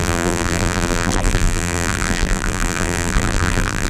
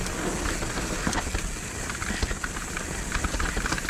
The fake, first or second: first